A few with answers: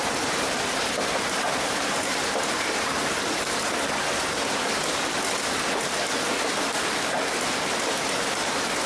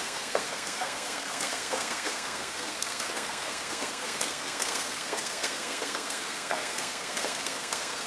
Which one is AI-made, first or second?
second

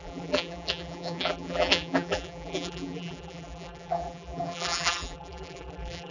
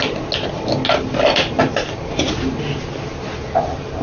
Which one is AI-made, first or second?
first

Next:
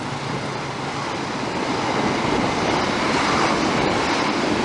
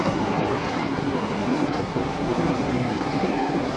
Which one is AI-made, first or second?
second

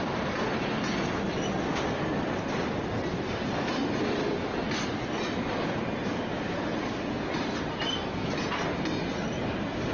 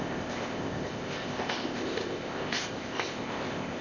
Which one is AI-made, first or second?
second